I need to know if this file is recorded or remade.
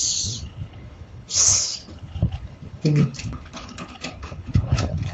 remade